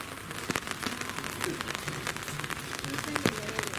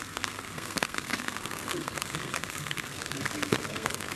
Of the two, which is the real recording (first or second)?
first